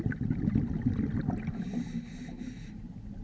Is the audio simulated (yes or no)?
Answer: no